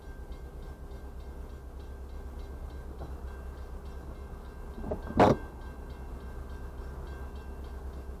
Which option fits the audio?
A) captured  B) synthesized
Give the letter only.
A